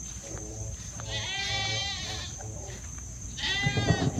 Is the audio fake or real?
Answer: real